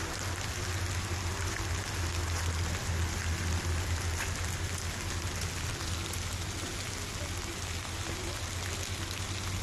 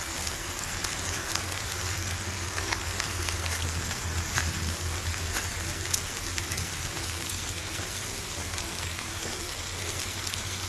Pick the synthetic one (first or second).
second